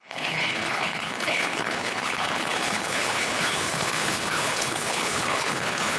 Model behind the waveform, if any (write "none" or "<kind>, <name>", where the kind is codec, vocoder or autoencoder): codec, HILCodec